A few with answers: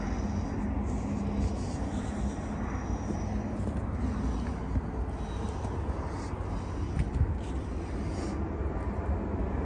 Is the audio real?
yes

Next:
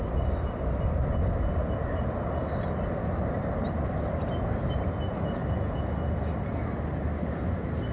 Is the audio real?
yes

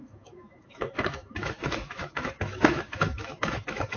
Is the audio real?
no